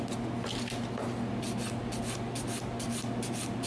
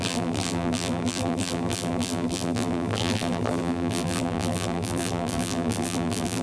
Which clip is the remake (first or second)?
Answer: second